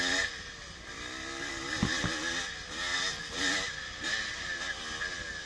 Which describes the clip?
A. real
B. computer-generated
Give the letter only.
A